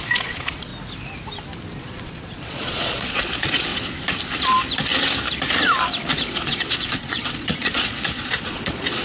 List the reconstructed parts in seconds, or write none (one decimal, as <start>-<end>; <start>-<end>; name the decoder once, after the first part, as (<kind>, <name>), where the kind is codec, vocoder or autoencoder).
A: 0.0-0.7 (vocoder, Vocos); 1.8-3.7; 6.1-9.0